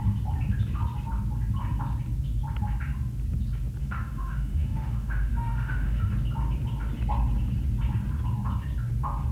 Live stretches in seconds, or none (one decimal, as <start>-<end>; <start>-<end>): 0.0-3.8; 6.1-9.3